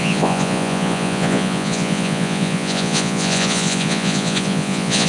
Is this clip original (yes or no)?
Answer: no